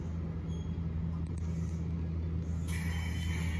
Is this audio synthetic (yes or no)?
no